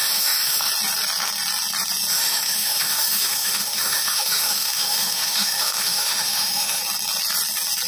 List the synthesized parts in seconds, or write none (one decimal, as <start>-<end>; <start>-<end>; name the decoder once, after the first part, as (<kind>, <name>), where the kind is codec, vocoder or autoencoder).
0.0-0.7 (autoencoder, DAC-VAE); 2.1-6.8